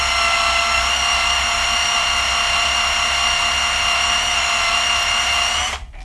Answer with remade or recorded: recorded